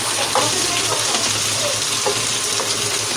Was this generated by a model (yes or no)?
no